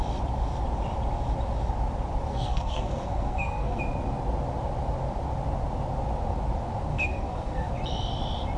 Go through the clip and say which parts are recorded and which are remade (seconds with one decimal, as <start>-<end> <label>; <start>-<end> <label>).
0.0-2.3 recorded; 2.3-3.8 remade; 3.8-6.9 recorded; 6.9-7.7 remade; 7.7-8.6 recorded